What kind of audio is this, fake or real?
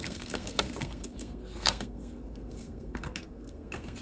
fake